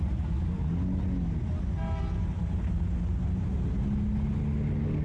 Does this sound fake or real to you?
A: real